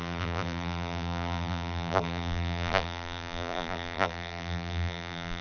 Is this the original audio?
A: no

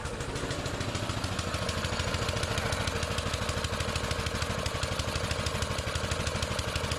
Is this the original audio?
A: yes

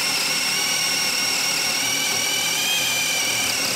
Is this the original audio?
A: yes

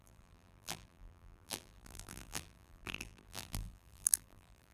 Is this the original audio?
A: no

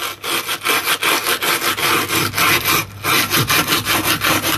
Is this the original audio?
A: yes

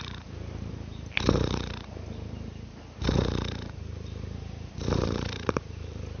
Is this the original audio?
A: no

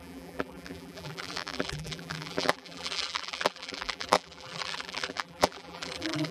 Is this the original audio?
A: no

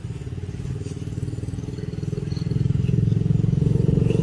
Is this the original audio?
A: yes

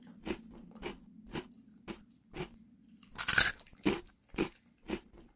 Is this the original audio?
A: yes